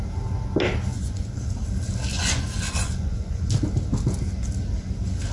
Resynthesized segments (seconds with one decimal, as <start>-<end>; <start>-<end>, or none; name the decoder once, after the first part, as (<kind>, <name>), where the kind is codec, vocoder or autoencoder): 0.9-1.4 (vocoder, Vocos); 2.1-3.5